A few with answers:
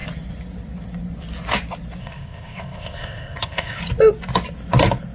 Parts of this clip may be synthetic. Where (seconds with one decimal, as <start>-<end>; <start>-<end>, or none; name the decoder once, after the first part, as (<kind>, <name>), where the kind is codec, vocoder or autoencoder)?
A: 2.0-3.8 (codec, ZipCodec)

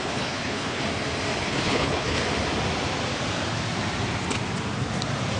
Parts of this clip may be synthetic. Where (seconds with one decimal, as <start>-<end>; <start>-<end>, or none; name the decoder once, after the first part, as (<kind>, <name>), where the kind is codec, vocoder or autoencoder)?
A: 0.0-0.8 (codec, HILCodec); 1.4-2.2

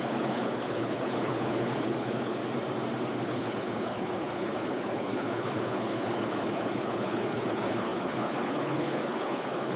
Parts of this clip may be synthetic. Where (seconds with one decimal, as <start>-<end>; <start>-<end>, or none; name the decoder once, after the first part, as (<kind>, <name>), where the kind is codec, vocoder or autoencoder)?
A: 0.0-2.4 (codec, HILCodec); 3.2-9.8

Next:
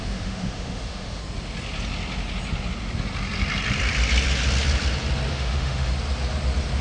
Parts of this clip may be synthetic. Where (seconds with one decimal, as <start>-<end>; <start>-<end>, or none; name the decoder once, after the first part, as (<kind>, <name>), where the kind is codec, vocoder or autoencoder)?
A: 0.0-1.2 (autoencoder, DAC-VAE); 5.3-5.9

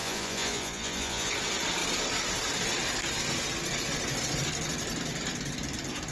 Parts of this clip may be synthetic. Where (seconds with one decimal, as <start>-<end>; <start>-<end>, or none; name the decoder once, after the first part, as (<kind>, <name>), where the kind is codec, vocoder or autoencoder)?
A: 0.0-1.3 (vocoder, Vocos)

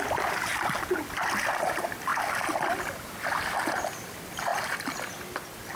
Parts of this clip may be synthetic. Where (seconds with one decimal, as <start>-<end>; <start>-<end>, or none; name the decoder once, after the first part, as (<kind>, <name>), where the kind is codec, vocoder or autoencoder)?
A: 0.0-0.5 (vocoder, BigVGAN v2); 1.5-2.1; 3.2-4.5

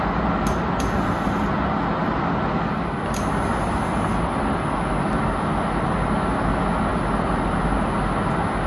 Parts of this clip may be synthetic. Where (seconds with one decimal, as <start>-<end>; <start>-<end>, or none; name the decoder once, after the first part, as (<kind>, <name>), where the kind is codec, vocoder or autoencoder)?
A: none